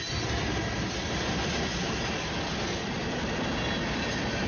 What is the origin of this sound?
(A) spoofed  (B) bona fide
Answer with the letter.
B